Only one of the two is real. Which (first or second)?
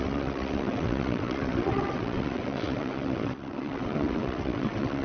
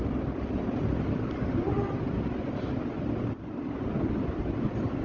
second